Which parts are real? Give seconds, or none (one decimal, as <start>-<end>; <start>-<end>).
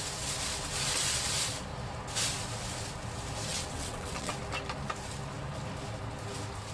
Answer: 0.0-3.5; 4.3-6.7